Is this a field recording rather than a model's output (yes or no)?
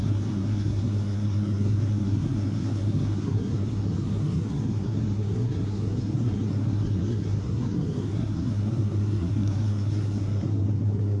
no